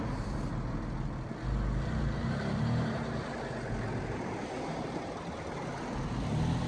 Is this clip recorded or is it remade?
recorded